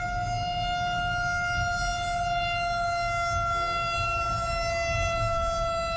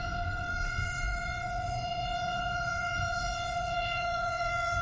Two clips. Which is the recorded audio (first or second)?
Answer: first